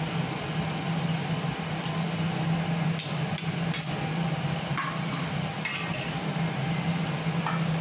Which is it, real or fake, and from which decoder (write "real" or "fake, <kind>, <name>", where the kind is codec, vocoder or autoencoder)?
real